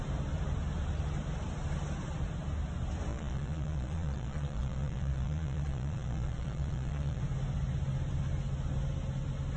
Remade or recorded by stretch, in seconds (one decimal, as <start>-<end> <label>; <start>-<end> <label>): 0.0-3.1 recorded; 3.1-7.2 remade; 7.2-9.6 recorded